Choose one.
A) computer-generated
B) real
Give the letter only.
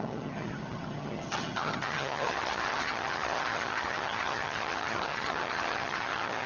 A